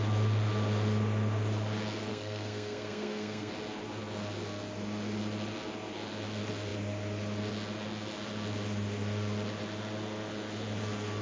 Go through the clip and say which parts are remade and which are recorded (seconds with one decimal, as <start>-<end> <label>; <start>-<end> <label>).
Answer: 0.0-2.1 recorded; 2.1-3.5 remade; 3.5-11.2 recorded